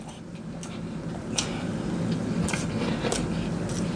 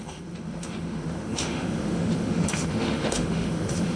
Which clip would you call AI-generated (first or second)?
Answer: second